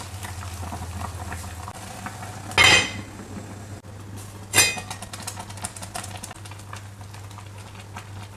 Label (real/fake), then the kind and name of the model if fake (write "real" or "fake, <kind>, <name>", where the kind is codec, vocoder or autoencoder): real